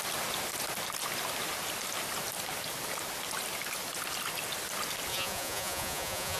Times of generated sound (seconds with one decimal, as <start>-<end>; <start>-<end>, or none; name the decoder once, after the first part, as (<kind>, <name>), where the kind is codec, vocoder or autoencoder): 5.1-6.4 (vocoder, Vocos)